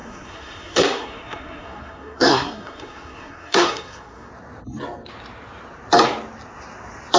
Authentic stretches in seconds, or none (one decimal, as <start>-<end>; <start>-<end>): 4.3-7.2